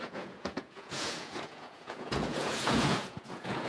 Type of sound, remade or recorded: remade